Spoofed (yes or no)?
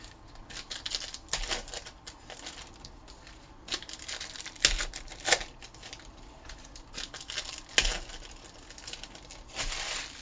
no